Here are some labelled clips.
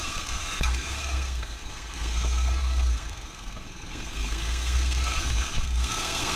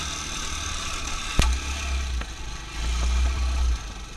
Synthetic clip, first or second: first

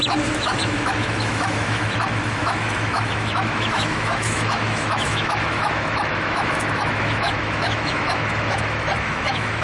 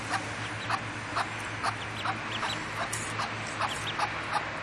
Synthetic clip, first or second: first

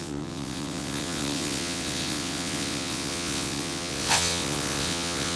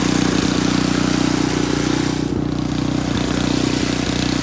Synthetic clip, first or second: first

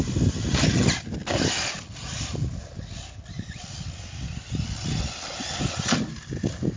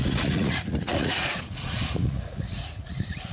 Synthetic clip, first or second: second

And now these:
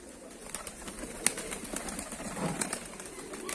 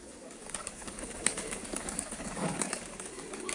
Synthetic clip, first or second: second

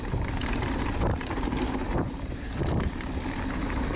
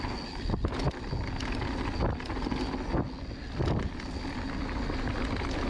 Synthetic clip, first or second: first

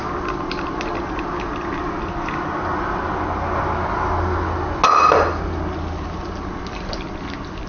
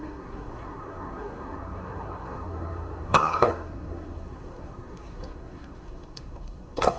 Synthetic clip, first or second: second